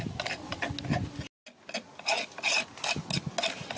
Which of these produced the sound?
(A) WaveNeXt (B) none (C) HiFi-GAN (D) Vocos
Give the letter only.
B